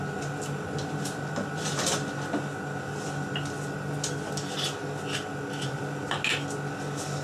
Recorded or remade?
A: recorded